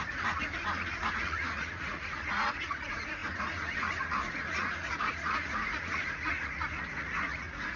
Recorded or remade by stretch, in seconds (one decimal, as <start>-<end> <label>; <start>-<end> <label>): 0.0-7.8 remade